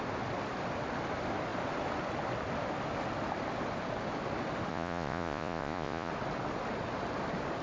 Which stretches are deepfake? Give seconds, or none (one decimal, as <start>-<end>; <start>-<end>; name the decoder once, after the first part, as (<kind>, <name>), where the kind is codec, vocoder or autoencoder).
4.7-6.1 (vocoder, Vocos)

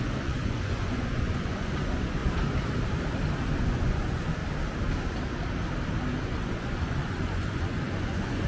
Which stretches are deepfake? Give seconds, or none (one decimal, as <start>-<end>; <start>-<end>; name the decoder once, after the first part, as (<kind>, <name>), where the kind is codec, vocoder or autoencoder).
0.0-2.2 (vocoder, Vocos); 3.6-4.4; 6.2-8.5

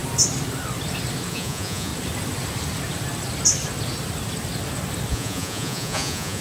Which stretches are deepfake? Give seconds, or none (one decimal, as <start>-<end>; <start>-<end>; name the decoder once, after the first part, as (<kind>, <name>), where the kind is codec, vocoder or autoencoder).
1.3-1.9 (vocoder, Vocos); 5.1-6.4

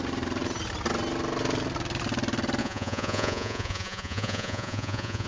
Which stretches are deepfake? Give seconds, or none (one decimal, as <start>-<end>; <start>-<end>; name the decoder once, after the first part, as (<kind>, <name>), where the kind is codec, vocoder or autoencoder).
2.6-5.3 (vocoder, Vocos)